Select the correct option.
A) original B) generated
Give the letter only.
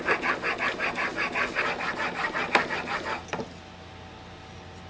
A